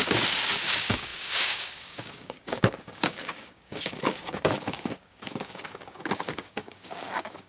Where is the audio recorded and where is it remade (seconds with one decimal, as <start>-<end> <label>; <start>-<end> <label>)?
0.0-7.5 remade